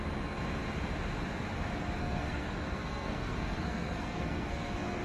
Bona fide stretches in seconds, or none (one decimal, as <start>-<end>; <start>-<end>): 0.0-2.0